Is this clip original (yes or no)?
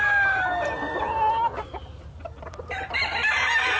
yes